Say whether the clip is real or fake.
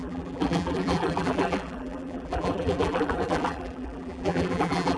fake